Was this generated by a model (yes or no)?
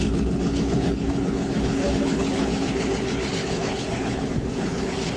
yes